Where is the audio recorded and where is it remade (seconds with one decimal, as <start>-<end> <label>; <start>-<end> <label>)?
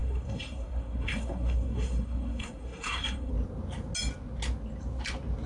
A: 0.0-3.3 remade; 3.3-5.5 recorded